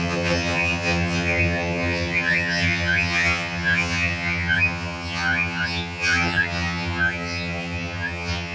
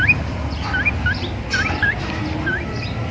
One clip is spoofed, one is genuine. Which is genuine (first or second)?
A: second